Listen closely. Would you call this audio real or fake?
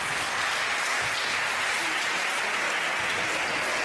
real